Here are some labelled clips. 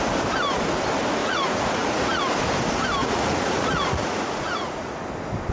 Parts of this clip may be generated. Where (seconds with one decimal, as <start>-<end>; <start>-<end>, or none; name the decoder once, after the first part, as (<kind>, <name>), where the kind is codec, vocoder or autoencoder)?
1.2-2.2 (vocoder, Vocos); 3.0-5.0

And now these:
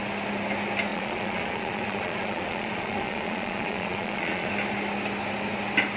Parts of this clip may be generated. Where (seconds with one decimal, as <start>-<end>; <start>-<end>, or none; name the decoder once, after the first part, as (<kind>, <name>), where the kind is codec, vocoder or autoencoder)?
0.9-4.5 (vocoder, Vocos)

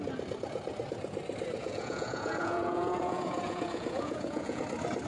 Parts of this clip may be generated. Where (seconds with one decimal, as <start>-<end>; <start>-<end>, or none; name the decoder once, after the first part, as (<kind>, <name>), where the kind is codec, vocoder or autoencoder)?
1.6-4.6 (vocoder, Vocos)

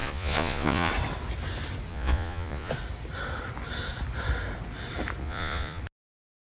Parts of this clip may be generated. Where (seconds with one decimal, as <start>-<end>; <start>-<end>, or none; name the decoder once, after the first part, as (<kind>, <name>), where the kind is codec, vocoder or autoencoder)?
0.0-0.9 (vocoder, Vocos); 1.9-2.7; 5.2-5.8

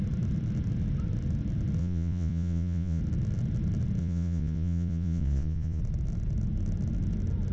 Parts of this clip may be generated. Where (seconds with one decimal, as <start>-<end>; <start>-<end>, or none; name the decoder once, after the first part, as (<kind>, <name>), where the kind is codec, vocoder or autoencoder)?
1.8-3.0 (vocoder, Vocos); 4.0-5.8

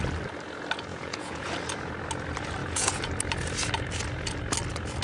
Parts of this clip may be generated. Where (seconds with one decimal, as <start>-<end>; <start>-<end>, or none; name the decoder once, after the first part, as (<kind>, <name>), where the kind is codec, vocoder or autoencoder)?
0.9-1.5 (vocoder, Vocos); 2.6-3.1

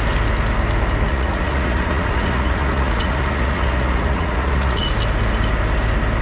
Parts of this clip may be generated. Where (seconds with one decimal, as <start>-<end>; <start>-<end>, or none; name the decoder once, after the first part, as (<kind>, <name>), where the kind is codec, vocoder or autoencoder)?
1.1-4.8 (vocoder, Vocos)